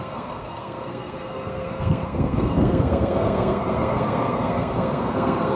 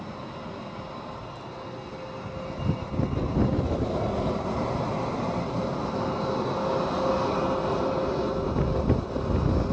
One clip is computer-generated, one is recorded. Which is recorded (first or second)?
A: second